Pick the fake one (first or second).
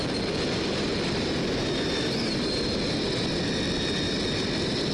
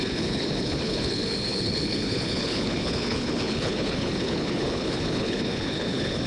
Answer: second